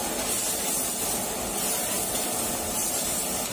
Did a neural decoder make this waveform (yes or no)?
no